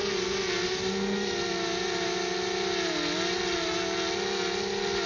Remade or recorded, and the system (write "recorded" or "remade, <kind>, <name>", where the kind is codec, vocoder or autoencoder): recorded